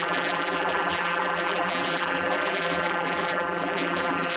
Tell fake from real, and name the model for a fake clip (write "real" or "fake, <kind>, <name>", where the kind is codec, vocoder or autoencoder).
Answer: fake, vocoder, BigVGAN v2